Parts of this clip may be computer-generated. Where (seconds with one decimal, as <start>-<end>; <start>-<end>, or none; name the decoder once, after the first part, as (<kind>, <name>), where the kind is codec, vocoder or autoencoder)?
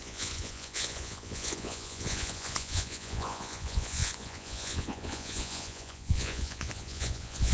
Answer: 0.0-7.5 (vocoder, Vocos)